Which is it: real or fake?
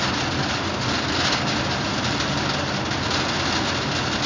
real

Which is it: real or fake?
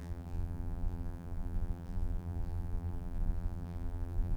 fake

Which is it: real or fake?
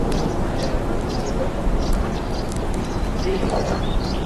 fake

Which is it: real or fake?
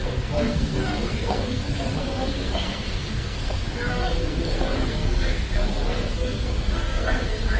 fake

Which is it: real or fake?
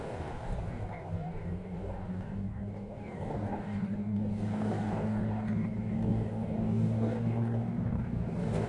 fake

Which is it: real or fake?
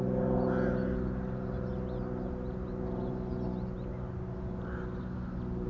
real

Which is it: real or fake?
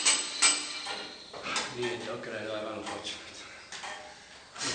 real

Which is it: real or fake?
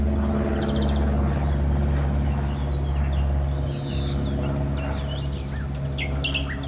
real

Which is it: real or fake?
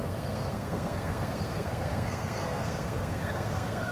fake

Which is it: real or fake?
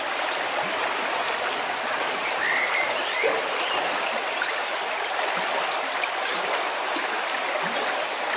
fake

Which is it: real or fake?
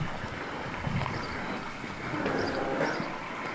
real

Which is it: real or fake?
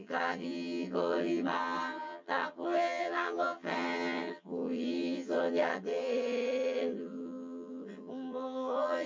fake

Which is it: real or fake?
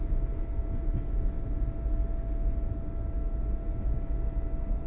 real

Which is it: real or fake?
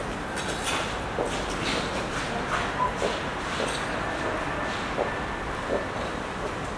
real